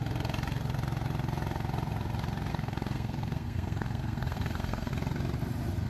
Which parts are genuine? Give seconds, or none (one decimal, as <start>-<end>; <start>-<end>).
0.0-2.5; 4.9-5.9